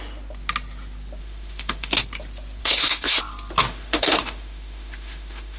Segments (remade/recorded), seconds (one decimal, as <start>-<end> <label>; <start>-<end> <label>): 0.0-1.2 recorded; 1.2-2.0 remade; 2.0-2.6 recorded; 2.6-3.2 remade; 3.2-3.6 recorded; 3.6-5.6 remade